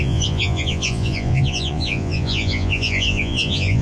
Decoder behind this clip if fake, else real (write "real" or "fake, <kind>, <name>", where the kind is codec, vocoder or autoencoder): fake, vocoder, Vocos